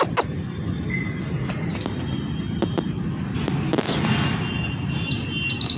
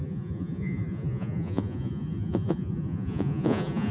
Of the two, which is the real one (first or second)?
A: first